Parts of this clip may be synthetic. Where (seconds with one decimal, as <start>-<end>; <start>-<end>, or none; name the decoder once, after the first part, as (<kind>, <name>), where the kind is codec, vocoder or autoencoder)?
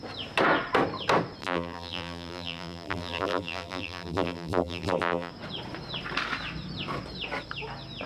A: 1.4-5.3 (vocoder, BigVGAN v2)